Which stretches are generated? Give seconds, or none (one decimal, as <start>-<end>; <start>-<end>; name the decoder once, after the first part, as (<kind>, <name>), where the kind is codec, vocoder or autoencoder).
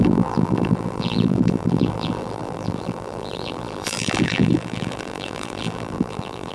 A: 0.0-6.5 (vocoder, BigVGAN v2)